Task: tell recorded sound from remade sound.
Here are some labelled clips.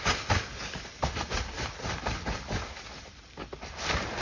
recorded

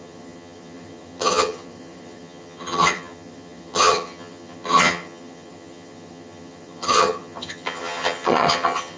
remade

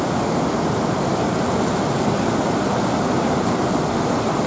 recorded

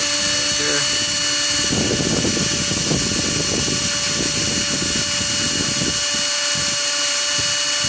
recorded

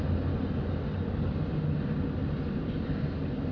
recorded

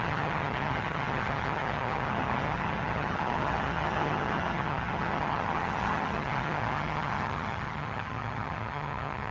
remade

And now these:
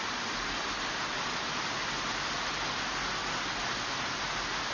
recorded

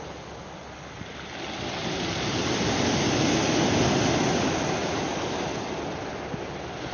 recorded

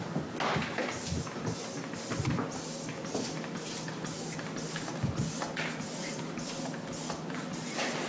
recorded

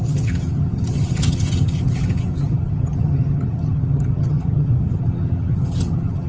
remade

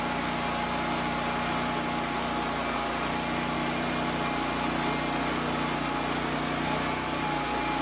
recorded